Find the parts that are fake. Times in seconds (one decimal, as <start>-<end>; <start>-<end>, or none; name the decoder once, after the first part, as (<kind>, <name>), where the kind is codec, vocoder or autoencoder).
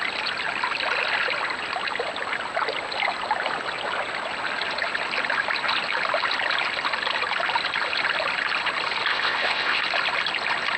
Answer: 9.1-9.8 (codec, ZipCodec)